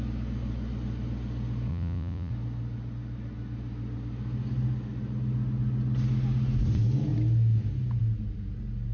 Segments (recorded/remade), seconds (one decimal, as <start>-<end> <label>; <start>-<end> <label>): 0.0-1.7 recorded; 1.7-2.3 remade; 2.3-8.9 recorded